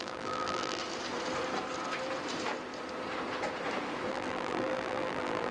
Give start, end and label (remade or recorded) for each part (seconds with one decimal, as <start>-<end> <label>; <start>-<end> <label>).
0.0-0.8 remade; 0.8-4.1 recorded; 4.1-5.5 remade